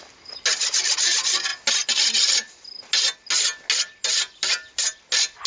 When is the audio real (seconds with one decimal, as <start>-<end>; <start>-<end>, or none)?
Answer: 0.0-5.5